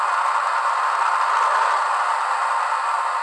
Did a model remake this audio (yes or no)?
no